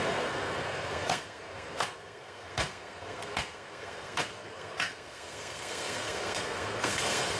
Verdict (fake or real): fake